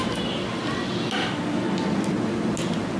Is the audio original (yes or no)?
yes